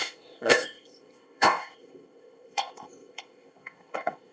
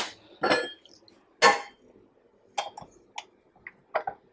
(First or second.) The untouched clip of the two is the second